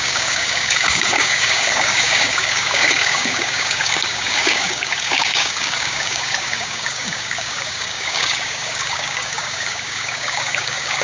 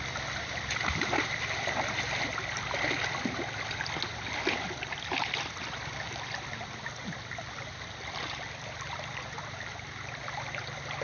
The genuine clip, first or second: second